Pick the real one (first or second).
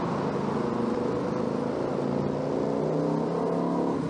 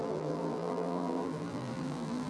first